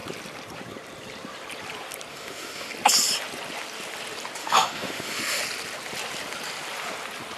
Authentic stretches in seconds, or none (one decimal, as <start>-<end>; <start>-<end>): 0.0-2.1; 2.7-4.4; 5.4-7.4